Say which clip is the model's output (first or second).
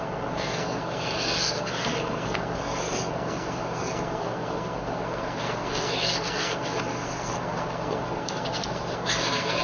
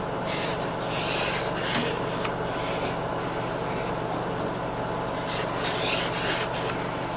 first